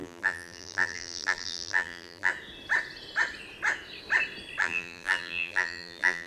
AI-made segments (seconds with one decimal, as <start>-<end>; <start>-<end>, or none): 0.0-2.3; 4.6-6.3